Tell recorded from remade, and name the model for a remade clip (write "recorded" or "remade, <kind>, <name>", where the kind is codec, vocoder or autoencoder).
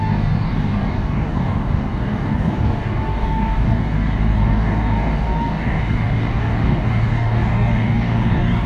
remade, codec, DAC